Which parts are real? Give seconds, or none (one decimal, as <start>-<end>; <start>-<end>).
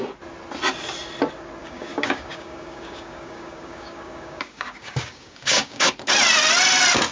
0.0-1.6; 5.9-7.1